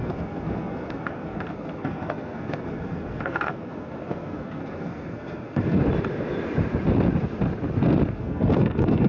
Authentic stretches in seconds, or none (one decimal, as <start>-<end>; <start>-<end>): 5.8-8.1